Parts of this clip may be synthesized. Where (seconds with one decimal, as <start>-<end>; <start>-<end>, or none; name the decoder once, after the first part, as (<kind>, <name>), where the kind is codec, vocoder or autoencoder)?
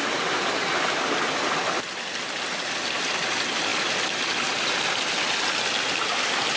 none